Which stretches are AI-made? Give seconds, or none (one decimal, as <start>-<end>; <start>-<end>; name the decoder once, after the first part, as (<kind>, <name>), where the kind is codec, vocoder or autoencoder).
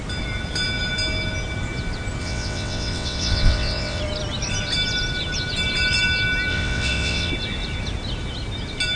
2.2-4.0 (vocoder, WaveNeXt); 6.5-7.3